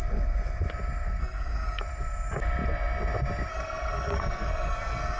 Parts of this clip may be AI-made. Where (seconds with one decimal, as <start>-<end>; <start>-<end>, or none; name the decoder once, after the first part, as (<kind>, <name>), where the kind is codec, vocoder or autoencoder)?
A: 1.2-1.8 (codec, SNAC); 3.5-5.2